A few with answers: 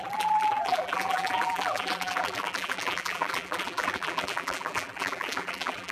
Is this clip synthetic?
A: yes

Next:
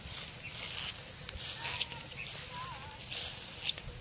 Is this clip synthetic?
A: no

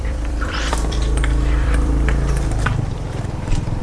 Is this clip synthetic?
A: yes